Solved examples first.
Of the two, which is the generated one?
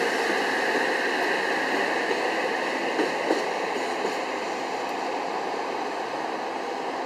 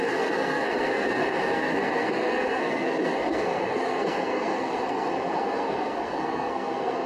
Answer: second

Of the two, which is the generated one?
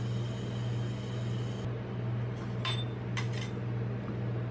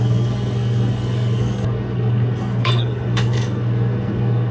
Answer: second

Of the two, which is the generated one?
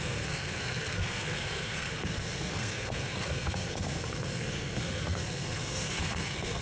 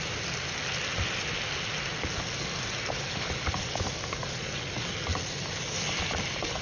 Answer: first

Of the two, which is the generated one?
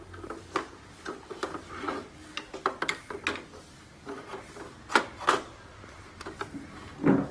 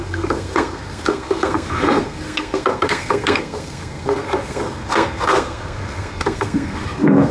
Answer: second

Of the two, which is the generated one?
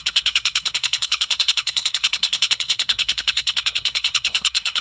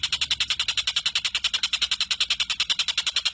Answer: first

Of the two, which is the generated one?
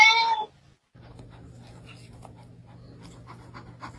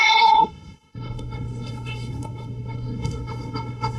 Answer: second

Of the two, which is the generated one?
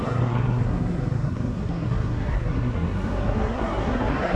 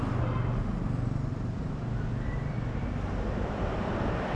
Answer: first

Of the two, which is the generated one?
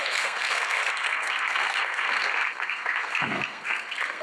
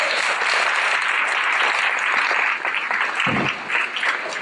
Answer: first